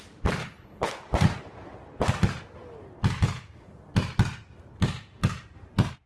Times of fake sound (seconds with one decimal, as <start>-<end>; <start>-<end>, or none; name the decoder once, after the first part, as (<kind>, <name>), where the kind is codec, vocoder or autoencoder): 0.4-0.9 (codec, HILCodec)